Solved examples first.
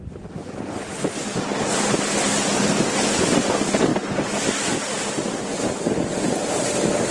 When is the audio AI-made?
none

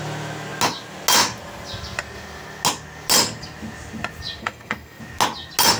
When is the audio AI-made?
4.4-5.0 (codec, SNAC)

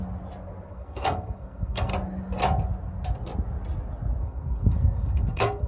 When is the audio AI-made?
0.7-1.9 (codec, SNAC); 4.2-5.7

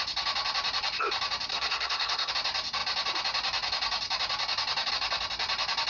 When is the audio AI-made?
1.5-2.3 (codec, SNAC)

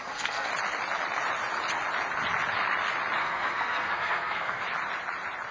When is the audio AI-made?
0.0-0.5 (codec, SNAC); 3.2-4.6

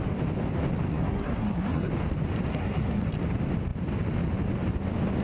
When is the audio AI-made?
0.9-1.9 (codec, SNAC); 2.5-3.1

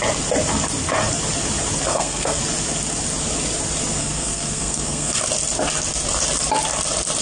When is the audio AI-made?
1.9-2.4 (codec, SNAC); 4.0-5.2

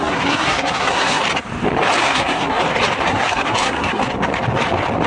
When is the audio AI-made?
0.0-1.2 (codec, SNAC); 2.0-2.6; 3.1-4.0